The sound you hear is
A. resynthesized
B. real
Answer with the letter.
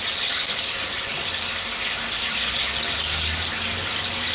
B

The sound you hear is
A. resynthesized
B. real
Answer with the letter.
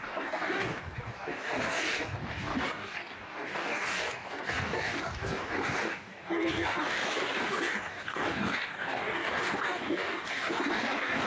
A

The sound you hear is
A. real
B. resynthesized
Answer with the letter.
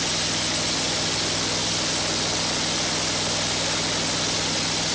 A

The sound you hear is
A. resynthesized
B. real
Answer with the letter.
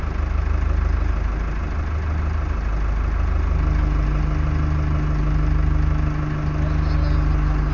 B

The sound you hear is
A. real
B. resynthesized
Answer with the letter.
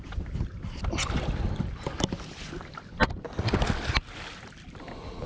A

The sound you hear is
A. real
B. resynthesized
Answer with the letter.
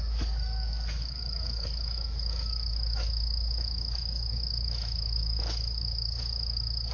B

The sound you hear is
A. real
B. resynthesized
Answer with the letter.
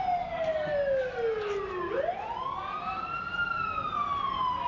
A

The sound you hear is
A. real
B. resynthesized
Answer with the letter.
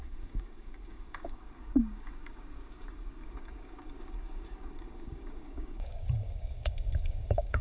B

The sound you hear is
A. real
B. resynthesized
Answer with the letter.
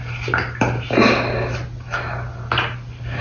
A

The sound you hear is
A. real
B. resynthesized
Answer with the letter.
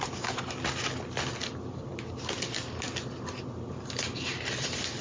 A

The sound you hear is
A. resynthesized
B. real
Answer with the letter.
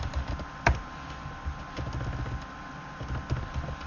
B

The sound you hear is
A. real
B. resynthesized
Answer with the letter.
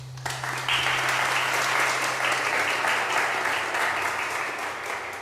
A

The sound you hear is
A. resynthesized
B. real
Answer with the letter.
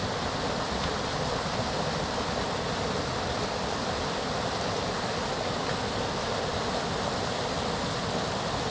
B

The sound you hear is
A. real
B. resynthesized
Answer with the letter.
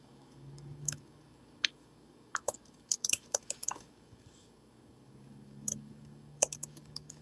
B